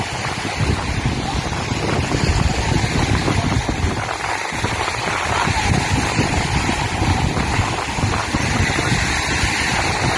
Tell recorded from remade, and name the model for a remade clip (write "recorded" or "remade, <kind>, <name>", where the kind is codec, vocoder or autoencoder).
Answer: recorded